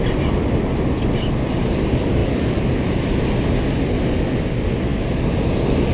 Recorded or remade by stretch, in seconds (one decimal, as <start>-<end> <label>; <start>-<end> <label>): 0.0-2.2 recorded; 2.2-3.0 remade; 3.0-5.9 recorded